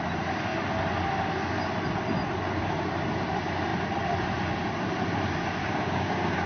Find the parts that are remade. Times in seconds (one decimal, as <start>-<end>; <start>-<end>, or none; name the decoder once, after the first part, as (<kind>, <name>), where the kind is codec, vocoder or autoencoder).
5.6-6.5 (codec, DAC)